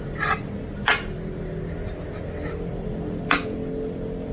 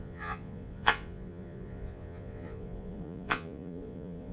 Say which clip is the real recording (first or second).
first